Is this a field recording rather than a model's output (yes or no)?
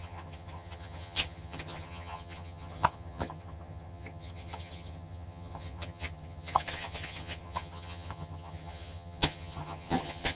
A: no